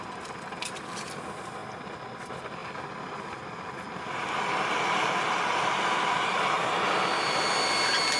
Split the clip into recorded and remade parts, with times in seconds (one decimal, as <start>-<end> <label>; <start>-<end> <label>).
0.0-8.2 recorded